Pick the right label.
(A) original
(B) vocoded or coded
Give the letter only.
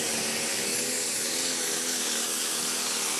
B